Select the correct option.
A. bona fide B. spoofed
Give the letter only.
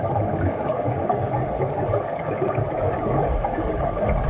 B